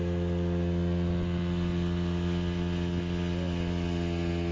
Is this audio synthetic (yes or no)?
no